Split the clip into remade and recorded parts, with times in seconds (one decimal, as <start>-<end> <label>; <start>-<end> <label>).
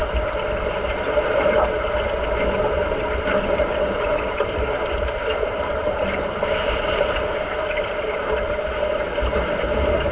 0.0-10.1 recorded